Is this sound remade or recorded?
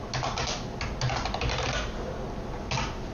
recorded